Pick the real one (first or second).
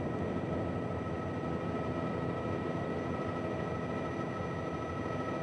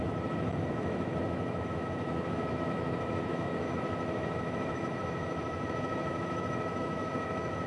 first